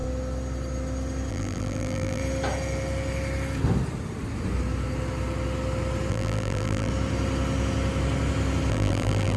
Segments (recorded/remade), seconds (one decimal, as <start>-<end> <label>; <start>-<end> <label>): 0.0-1.3 recorded; 1.3-2.2 remade; 2.2-6.1 recorded; 6.1-6.9 remade; 6.9-8.7 recorded; 8.7-9.4 remade